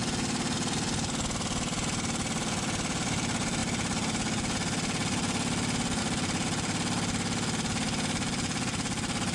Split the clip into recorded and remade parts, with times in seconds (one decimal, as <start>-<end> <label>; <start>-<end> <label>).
0.0-9.3 recorded